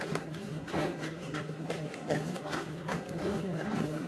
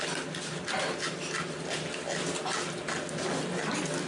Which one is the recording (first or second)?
second